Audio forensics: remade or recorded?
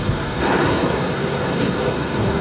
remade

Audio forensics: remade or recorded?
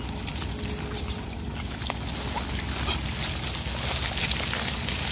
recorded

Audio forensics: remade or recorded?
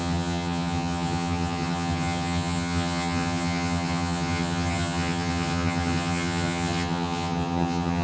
remade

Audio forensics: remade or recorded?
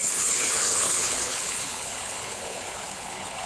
remade